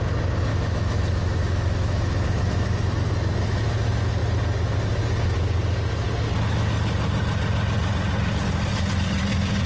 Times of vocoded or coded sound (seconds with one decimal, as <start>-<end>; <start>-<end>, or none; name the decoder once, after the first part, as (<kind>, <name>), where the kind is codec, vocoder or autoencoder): 0.5-3.1 (autoencoder, DAC-VAE)